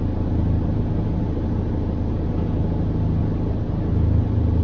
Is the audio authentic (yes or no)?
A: yes